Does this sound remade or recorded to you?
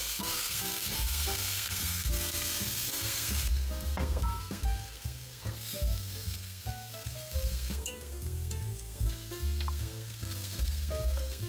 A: remade